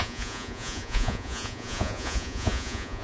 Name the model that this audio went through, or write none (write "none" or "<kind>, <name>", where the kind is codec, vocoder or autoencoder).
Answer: vocoder, Vocos